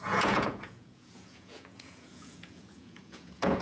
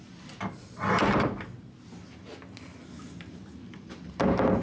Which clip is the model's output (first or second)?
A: first